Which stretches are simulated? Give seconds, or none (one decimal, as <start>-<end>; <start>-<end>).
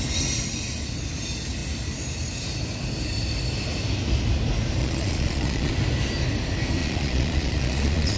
4.8-5.7; 6.8-8.2